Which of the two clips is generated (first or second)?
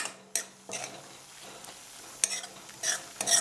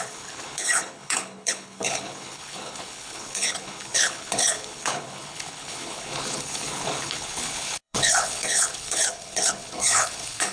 second